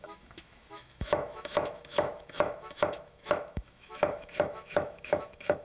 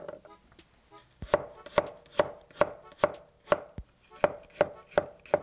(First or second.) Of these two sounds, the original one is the second